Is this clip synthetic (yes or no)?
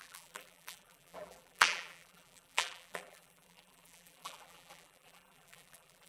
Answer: yes